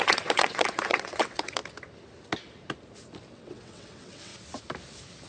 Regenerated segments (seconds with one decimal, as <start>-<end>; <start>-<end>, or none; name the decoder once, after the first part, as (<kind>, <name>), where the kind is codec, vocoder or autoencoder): 0.0-1.6 (vocoder, WaveNeXt); 3.3-4.3